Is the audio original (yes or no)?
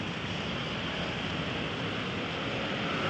no